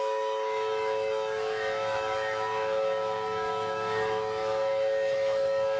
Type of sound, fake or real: fake